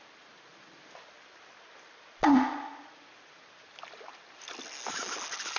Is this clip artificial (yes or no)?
no